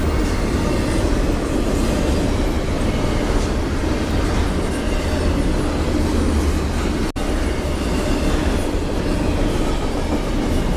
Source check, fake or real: real